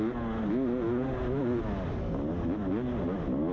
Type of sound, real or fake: real